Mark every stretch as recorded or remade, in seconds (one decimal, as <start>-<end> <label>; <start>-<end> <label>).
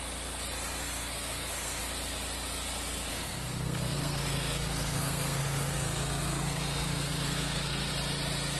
0.0-0.8 recorded; 0.8-1.8 remade; 1.8-3.1 recorded; 3.1-7.9 remade; 7.9-8.6 recorded